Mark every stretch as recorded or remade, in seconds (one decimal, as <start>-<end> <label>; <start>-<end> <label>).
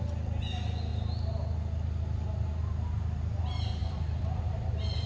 0.0-3.8 recorded; 3.8-5.1 remade